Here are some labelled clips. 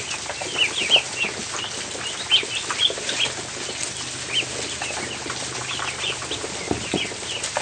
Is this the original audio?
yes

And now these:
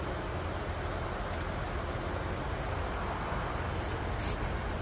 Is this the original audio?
yes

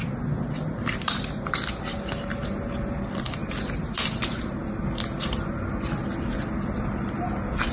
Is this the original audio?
yes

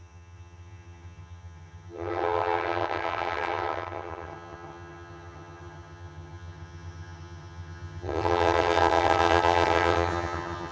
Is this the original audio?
no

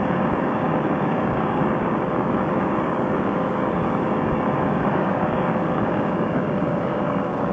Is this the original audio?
no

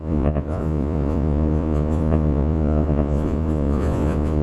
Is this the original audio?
no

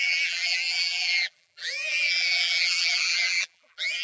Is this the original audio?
no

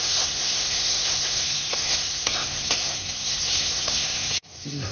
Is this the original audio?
no